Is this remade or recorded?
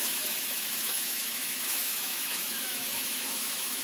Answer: remade